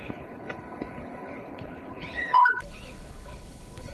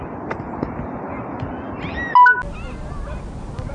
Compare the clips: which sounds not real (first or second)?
first